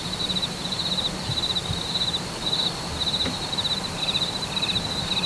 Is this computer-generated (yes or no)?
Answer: no